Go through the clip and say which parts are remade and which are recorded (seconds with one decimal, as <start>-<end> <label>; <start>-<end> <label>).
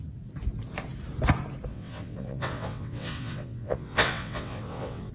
0.0-1.7 recorded; 1.7-5.1 remade